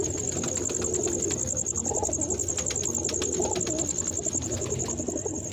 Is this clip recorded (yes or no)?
yes